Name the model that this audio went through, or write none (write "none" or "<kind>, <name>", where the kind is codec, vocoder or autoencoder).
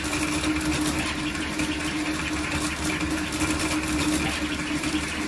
none